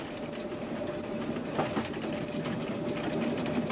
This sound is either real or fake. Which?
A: real